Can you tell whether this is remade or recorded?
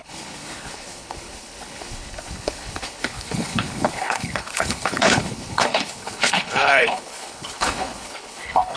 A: remade